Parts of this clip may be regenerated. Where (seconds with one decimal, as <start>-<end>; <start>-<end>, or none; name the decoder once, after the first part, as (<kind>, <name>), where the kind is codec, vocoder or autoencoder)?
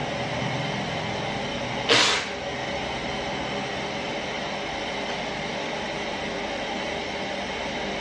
4.8-8.0 (vocoder, BigVGAN v2)